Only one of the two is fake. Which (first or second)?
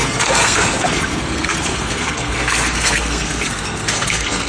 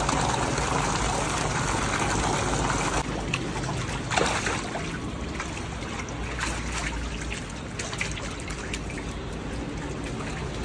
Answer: first